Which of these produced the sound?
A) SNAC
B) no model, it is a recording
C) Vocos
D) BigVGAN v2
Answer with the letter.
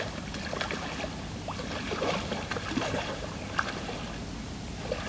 B